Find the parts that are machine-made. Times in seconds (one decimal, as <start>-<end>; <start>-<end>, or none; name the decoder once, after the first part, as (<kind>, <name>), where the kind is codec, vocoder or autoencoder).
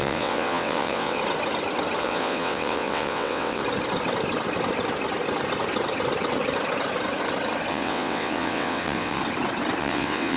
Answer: 0.0-1.2 (vocoder, WaveNeXt); 2.0-3.6; 7.7-9.2; 9.8-10.4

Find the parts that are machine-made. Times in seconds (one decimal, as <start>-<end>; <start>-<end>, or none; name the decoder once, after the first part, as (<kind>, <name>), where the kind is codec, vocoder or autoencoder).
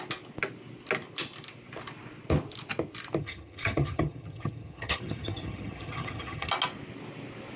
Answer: 3.2-6.5 (vocoder, HiFi-GAN)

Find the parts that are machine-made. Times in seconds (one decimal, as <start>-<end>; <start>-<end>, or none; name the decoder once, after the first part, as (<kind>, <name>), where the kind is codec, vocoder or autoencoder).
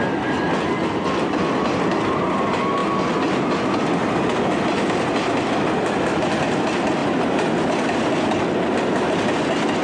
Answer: 7.0-7.6 (vocoder, BigVGAN v2)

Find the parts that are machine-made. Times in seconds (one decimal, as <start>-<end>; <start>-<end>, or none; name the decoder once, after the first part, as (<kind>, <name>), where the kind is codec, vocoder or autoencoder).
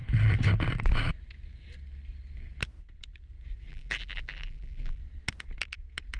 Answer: 3.7-5.0 (vocoder, BigVGAN v2)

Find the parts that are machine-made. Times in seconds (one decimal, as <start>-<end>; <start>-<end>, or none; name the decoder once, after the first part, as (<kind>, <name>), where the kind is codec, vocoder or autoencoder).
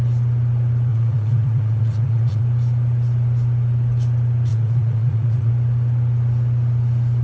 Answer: 0.9-2.4 (vocoder, Vocos); 4.5-5.5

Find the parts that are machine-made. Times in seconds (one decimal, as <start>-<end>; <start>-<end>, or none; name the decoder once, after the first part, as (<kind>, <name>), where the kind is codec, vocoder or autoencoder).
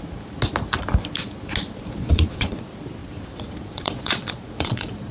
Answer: 2.0-2.6 (vocoder, Vocos); 3.0-5.1